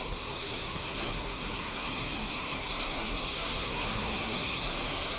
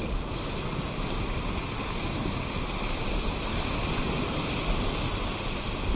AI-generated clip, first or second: first